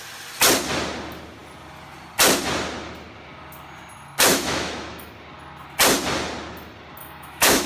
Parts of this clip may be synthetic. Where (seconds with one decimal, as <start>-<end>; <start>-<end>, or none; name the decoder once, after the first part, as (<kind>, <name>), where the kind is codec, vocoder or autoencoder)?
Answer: 4.3-5.1 (autoencoder, DAC-VAE); 7.0-7.7